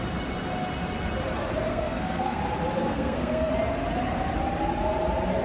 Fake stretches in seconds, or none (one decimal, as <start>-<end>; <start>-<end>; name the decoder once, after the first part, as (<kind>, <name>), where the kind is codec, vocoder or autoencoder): 1.7-2.4 (codec, SNAC); 2.8-3.5